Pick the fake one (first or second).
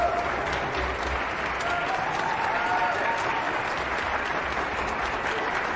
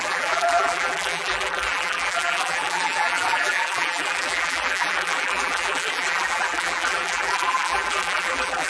second